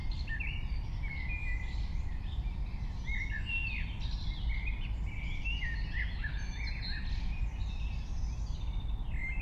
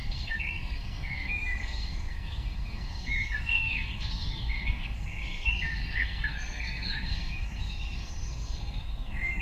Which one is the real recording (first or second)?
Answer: first